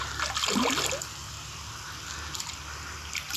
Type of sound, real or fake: real